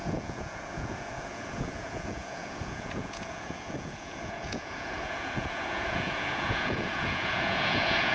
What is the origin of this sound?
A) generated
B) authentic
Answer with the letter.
A